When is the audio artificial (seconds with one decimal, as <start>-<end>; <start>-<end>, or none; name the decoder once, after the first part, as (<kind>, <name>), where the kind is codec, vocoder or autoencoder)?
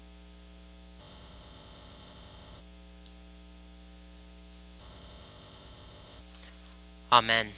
1.0-2.6 (codec, ZipCodec); 4.8-6.2